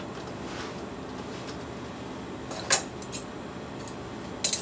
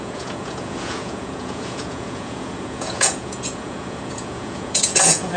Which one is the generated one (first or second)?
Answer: second